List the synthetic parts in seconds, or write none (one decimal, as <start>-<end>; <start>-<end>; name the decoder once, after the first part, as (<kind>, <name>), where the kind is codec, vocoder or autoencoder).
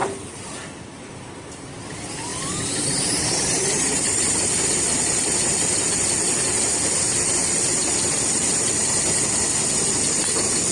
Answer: 0.0-1.0 (vocoder, BigVGAN v2); 2.3-4.4